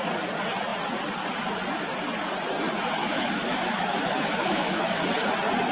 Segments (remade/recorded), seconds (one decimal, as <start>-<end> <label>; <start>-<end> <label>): 0.0-3.0 recorded; 3.0-5.1 remade; 5.1-5.7 recorded